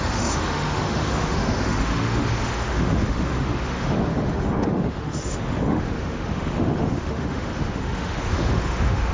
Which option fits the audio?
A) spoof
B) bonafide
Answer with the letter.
A